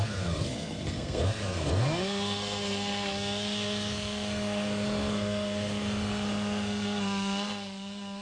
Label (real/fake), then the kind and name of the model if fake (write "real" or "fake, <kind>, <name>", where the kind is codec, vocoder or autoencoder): fake, codec, SNAC